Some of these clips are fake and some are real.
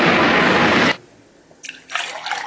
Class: real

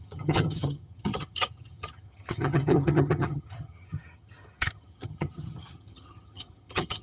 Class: fake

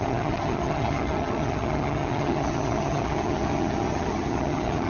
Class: fake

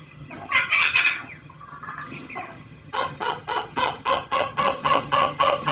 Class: fake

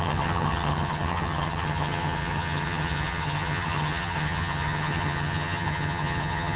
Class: fake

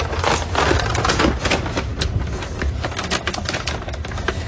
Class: real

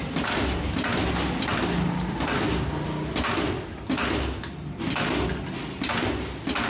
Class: real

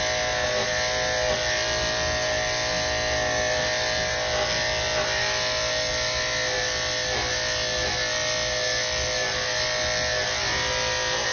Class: real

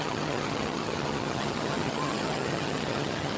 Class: fake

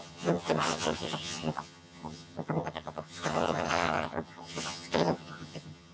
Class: fake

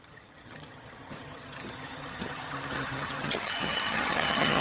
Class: fake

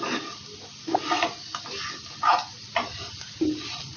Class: real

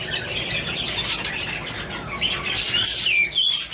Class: real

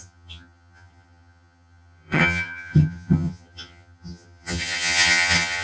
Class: fake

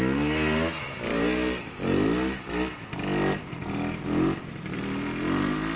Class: real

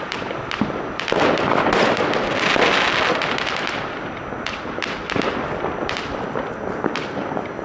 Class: real